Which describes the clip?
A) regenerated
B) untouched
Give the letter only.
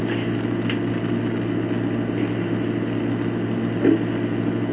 B